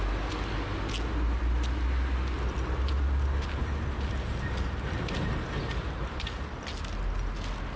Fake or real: real